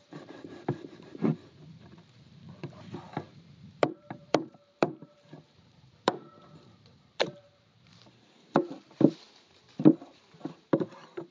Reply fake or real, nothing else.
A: fake